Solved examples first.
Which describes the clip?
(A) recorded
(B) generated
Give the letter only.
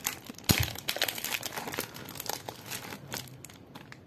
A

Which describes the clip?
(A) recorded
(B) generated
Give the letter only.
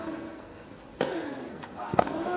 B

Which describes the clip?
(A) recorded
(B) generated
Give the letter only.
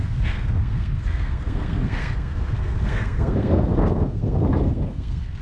B